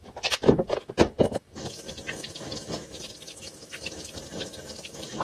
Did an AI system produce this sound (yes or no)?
yes